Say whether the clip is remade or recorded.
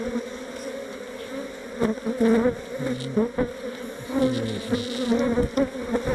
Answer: recorded